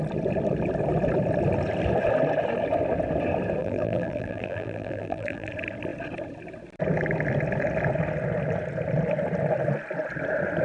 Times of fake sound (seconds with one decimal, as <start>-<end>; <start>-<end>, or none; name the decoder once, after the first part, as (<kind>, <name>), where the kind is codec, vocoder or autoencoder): 3.6-5.5 (vocoder, BigVGAN v2)

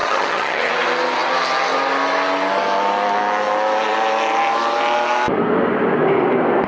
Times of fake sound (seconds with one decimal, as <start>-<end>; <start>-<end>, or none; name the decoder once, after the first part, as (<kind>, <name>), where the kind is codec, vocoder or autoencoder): 0.0-0.7 (vocoder, HiFi-GAN)

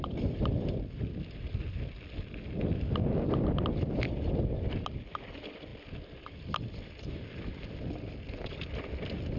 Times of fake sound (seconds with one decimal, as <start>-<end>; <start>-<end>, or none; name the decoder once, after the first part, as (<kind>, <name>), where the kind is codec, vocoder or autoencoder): none

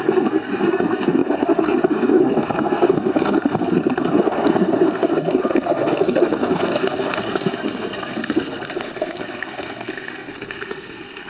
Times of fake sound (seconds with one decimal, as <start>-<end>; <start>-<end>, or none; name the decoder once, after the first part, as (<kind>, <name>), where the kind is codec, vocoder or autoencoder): 0.0-11.3 (codec, SNAC)